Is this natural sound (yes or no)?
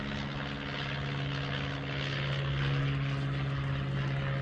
yes